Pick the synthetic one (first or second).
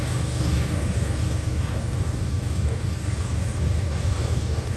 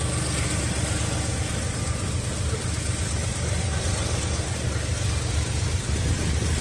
first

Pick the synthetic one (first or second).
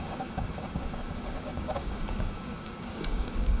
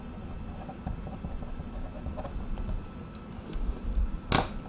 first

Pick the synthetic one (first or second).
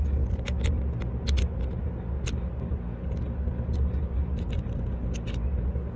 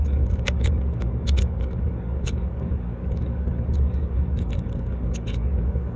second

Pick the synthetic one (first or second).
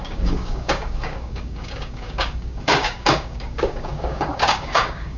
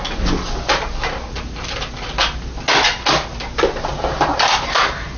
first